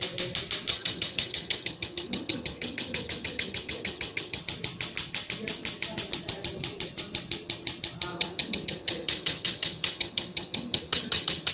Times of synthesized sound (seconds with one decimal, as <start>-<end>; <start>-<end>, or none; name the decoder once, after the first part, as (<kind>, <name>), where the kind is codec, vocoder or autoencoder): 0.7-4.4 (vocoder, HiFi-GAN); 8.1-11.5